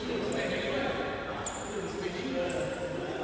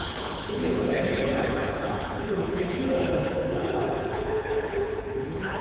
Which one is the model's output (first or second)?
second